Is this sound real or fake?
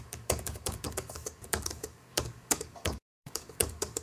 fake